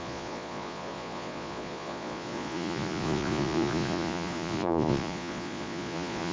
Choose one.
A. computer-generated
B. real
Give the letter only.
A